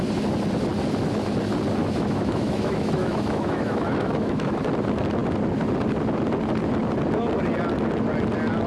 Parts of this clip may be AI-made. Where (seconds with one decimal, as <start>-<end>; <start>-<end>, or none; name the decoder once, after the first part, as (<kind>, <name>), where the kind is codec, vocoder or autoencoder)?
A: 1.8-4.6 (autoencoder, DAC-VAE)